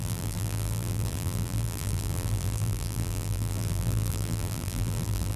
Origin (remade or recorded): remade